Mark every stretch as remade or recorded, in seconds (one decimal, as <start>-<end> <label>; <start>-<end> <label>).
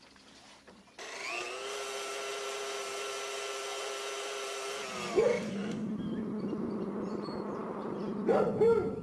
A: 0.0-9.0 recorded